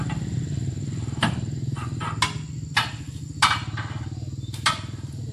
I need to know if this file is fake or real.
real